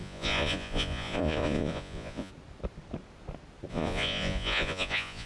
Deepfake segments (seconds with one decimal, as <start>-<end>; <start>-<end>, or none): 0.0-2.3; 3.7-5.3